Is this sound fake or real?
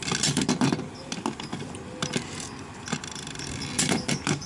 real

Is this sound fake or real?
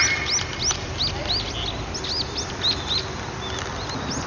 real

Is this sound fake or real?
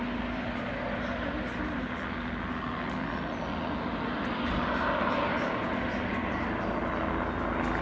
real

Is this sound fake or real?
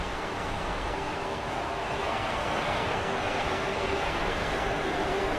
fake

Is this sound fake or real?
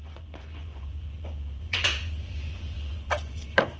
fake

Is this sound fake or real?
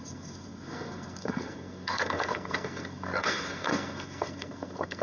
fake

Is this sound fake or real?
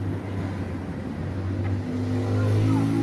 real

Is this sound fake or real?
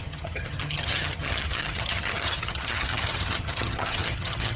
fake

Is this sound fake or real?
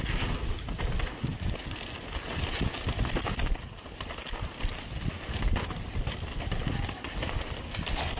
real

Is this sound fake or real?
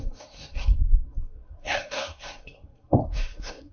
fake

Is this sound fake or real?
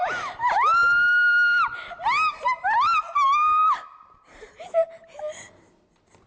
real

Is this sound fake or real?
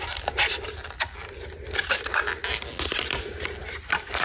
real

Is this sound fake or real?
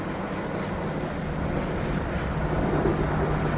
real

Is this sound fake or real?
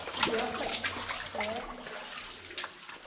real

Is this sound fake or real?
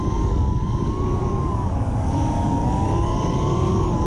fake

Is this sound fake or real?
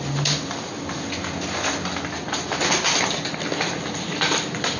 real